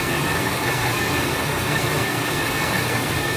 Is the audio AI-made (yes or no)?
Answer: yes